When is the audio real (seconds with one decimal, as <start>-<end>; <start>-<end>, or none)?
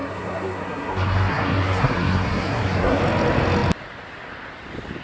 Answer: 3.0-5.0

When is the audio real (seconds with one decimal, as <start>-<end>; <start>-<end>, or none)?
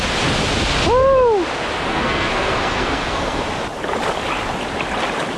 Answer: 0.0-1.9; 3.4-5.4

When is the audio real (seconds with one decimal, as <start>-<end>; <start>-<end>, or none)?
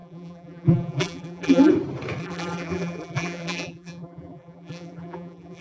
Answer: 1.7-2.2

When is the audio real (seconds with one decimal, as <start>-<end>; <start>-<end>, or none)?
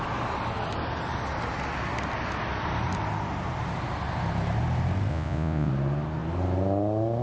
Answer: 0.0-5.1; 5.7-7.2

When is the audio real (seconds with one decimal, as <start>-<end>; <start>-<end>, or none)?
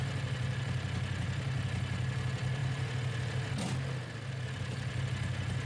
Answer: 0.0-5.7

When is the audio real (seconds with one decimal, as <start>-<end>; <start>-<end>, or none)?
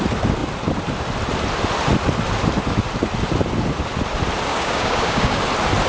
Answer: 0.0-4.5; 5.4-5.9